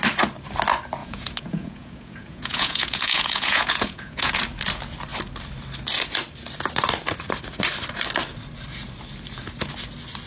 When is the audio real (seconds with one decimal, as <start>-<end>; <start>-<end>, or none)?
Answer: 0.0-1.0; 4.4-10.3